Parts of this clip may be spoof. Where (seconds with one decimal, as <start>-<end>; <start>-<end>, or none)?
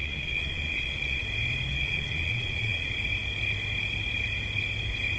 0.0-1.2; 1.7-2.9